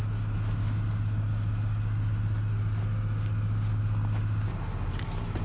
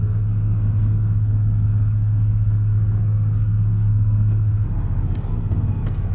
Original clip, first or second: first